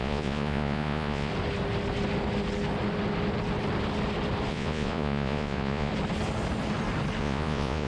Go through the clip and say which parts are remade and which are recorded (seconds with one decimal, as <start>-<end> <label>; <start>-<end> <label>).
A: 0.0-1.3 remade; 1.3-4.5 recorded; 4.5-5.9 remade; 5.9-7.2 recorded; 7.2-7.9 remade